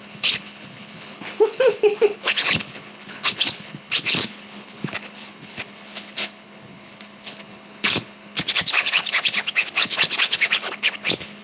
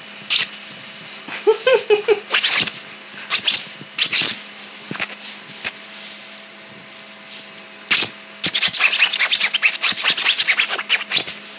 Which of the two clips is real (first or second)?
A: second